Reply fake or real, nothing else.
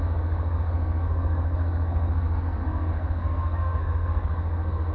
fake